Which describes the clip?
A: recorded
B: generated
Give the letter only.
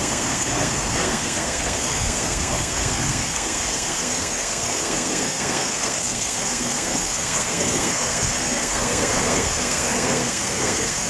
B